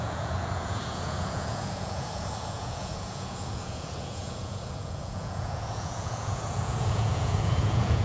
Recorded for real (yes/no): no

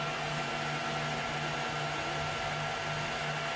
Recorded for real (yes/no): yes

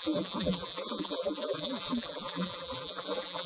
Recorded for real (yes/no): no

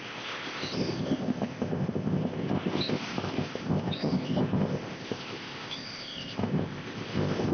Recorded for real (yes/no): no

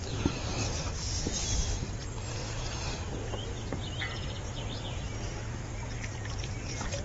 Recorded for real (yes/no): yes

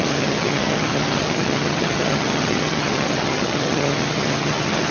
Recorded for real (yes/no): no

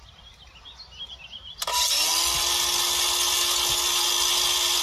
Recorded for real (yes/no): yes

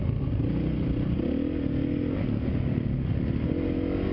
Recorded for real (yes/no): yes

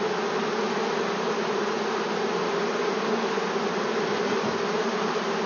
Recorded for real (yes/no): yes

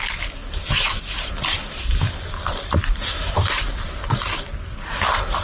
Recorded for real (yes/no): no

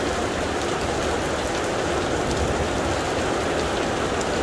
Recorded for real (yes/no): yes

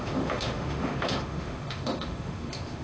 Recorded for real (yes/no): no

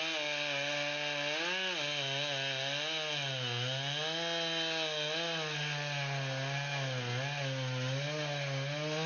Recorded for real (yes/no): yes